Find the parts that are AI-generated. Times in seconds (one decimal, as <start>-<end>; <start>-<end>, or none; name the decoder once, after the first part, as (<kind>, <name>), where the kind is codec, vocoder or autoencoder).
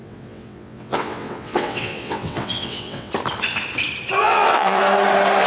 0.0-3.1 (vocoder, WaveNeXt); 4.2-4.8